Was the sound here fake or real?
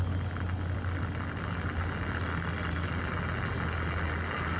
real